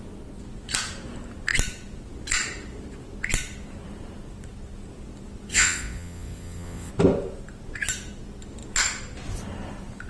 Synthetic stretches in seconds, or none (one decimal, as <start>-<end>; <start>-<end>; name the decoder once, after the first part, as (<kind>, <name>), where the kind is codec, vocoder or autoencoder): 5.5-6.9 (vocoder, WaveNeXt)